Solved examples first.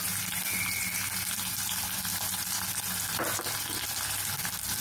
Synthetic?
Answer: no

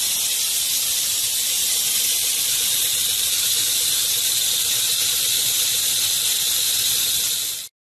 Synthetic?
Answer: no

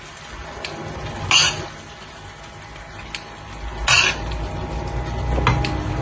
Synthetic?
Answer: no